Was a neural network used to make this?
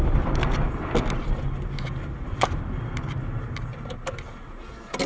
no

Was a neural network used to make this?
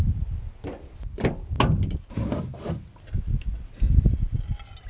no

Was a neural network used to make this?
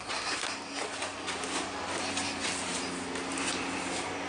no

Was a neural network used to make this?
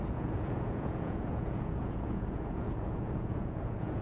yes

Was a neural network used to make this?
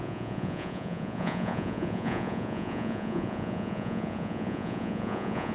yes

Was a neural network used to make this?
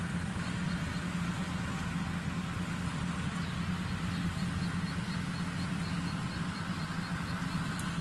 no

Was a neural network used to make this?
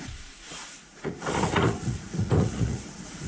yes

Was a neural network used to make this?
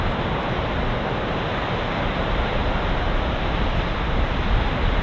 no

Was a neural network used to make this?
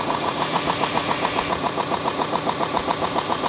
yes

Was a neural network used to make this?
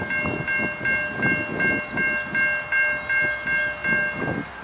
no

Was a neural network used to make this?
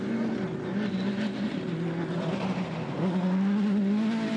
no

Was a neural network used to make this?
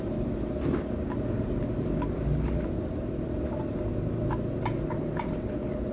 no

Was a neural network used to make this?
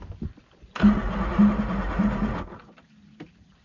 no